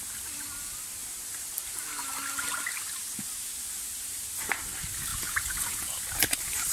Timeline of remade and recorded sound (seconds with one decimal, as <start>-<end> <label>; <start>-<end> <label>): 0.0-5.1 recorded; 5.1-6.0 remade; 6.0-6.7 recorded